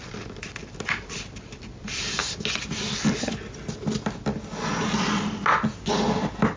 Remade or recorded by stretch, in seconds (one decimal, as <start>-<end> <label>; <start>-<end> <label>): 0.0-2.2 remade; 2.2-6.6 recorded